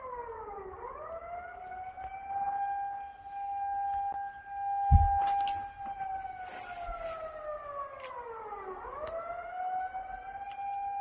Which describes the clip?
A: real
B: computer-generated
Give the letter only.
A